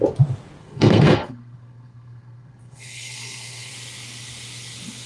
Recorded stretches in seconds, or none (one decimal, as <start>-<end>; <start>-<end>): 0.0-0.6; 3.7-5.1